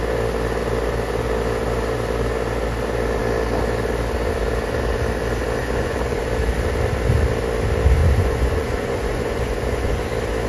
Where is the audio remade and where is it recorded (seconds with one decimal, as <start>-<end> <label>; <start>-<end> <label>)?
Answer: 0.0-5.6 recorded; 5.6-6.2 remade; 6.2-8.0 recorded; 8.0-10.0 remade; 10.0-10.5 recorded